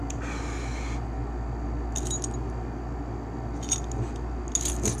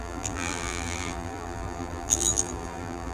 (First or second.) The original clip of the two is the first